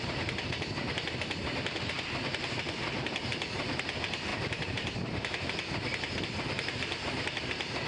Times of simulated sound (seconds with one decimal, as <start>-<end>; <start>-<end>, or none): 0.0-0.8; 1.8-7.9